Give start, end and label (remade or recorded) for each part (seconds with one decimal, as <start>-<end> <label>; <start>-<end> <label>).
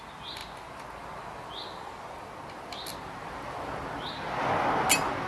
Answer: 0.0-5.3 recorded